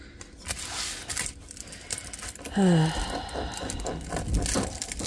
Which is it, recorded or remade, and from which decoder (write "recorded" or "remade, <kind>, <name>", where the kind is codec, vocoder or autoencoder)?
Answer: recorded